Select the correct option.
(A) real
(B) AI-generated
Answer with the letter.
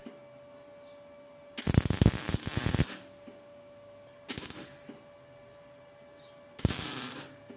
A